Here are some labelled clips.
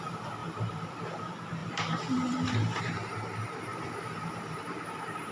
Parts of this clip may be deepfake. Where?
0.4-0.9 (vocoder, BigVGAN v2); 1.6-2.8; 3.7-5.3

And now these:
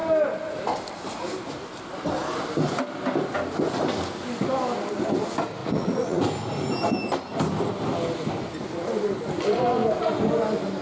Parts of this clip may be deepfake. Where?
5.6-6.2 (vocoder, Vocos)

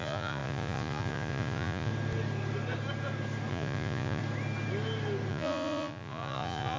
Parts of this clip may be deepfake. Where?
0.0-1.9 (vocoder, Vocos); 3.5-4.2; 5.3-6.8

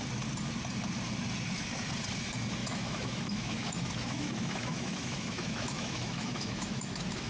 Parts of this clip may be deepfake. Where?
2.6-7.3 (autoencoder, DAC-VAE)